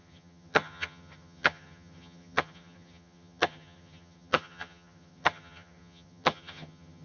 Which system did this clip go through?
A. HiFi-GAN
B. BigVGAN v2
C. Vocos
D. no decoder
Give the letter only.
A